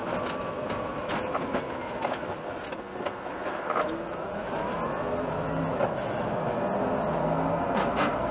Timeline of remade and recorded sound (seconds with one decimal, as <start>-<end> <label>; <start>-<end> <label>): 0.0-7.2 recorded; 7.2-8.3 remade